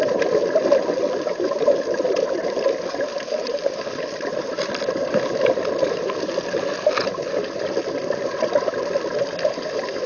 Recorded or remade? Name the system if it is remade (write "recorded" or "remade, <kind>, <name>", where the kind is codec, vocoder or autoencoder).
remade, vocoder, BigVGAN v2